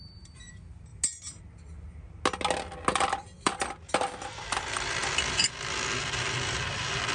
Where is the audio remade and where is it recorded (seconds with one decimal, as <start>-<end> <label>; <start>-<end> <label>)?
0.0-0.9 remade; 0.9-3.4 recorded; 3.4-5.0 remade; 5.0-6.2 recorded; 6.2-7.1 remade